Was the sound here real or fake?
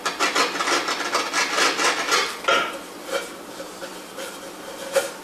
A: real